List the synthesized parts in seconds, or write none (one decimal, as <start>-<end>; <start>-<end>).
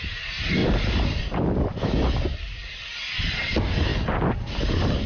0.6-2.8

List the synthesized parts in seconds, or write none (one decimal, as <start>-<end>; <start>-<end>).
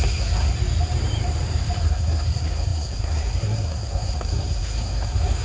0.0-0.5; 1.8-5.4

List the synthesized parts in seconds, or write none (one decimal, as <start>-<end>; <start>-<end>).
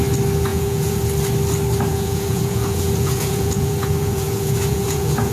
0.5-1.0; 1.9-5.3